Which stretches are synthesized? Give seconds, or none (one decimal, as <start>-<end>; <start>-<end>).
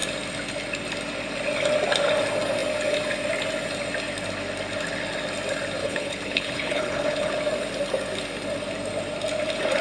5.8-7.3